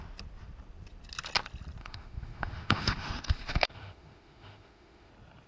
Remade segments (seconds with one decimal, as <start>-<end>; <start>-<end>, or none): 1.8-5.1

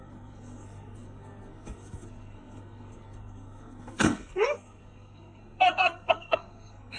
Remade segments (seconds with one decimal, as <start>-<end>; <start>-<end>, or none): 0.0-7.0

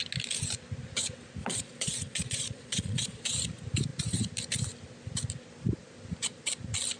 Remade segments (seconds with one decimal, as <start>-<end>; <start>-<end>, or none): 1.4-3.2

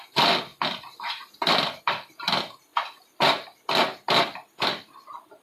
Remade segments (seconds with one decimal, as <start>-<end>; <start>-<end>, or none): 0.5-1.8; 2.7-5.4